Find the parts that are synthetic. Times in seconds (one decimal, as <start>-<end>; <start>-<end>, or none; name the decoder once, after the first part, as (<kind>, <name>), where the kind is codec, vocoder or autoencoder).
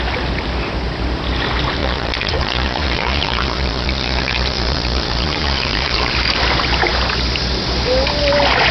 1.8-6.1 (vocoder, Vocos)